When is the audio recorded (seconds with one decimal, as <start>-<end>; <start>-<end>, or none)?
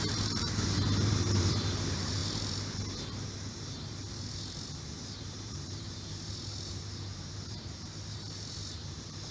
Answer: 2.2-5.2